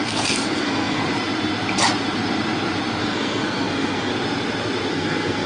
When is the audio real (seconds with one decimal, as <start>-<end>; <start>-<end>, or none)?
1.0-3.0; 4.1-4.9